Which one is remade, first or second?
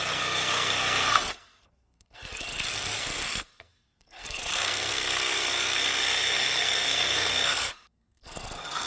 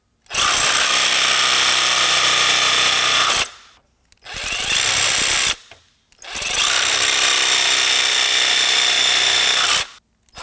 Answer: first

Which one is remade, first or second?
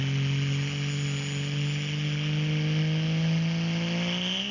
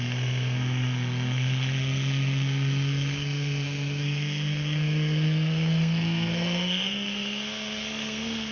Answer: second